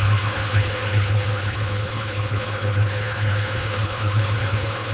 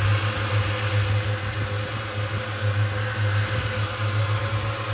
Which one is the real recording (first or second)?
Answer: second